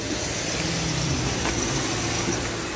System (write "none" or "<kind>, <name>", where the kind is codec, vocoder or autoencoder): none